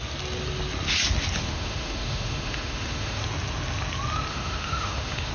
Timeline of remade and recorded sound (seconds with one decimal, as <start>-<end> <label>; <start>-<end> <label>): 0.0-1.4 recorded; 1.4-3.2 remade; 3.2-4.3 recorded; 4.3-5.3 remade